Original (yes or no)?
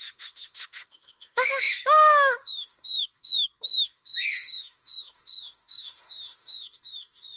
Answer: no